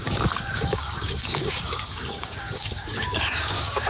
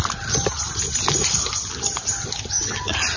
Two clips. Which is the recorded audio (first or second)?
second